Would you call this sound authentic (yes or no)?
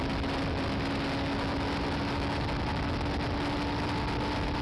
yes